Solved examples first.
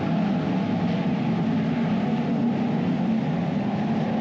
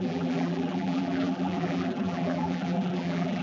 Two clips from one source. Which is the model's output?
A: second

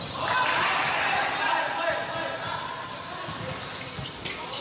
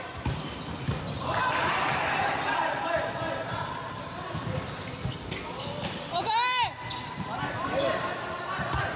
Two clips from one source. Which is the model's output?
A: second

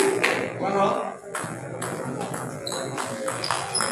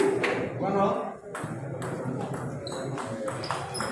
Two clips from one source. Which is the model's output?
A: first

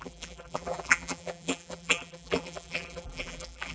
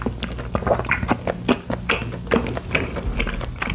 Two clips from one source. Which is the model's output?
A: first